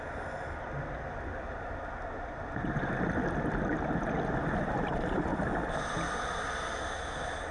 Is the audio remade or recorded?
recorded